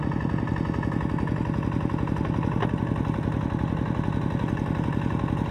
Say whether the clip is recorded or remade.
recorded